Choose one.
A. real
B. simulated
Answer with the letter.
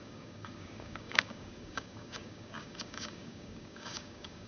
B